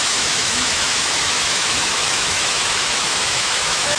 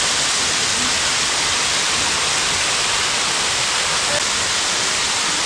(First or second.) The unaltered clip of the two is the second